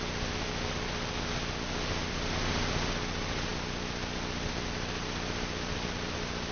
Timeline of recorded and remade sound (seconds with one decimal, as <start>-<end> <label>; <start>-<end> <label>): 0.0-6.5 recorded